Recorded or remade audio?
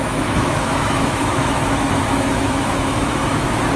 remade